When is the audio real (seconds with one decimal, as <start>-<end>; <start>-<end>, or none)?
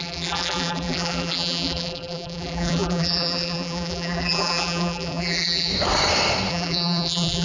5.7-6.5